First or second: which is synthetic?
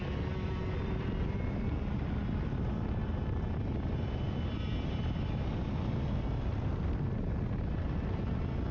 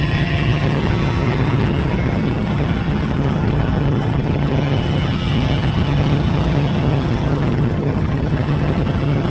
second